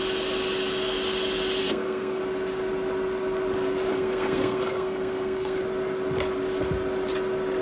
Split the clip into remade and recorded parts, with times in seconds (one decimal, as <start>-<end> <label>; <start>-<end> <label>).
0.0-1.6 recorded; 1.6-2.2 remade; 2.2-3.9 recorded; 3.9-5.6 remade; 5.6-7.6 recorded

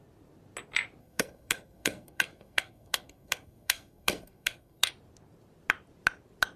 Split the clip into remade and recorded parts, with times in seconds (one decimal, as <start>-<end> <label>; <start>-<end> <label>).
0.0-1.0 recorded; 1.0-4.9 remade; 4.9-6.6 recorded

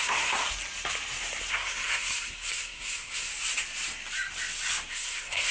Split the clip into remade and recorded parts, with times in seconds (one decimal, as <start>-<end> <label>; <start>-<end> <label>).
0.0-0.4 remade; 0.4-1.5 recorded; 1.5-3.3 remade; 3.3-4.9 recorded; 4.9-5.5 remade

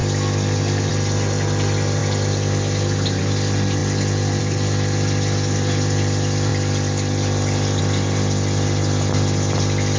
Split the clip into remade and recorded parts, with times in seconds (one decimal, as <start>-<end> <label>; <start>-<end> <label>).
0.0-2.0 recorded; 2.0-3.2 remade; 3.2-6.5 recorded; 6.5-7.8 remade; 7.8-10.0 recorded